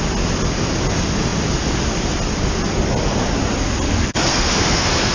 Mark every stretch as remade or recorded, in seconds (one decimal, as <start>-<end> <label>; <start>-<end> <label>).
0.0-4.0 recorded; 4.0-5.1 remade